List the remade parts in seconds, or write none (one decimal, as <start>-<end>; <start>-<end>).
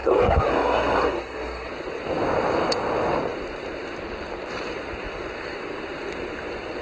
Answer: 0.0-1.7